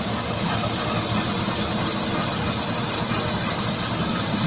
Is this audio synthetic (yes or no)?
no